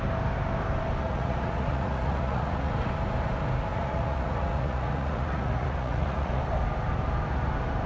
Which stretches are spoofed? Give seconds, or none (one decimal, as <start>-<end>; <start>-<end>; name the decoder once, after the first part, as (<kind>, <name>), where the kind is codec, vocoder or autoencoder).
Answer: 1.0-2.7 (vocoder, Vocos); 3.7-6.4